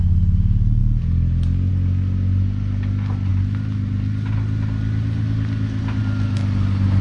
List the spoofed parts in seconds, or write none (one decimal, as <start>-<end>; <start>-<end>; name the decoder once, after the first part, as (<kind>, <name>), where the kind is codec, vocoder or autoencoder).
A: none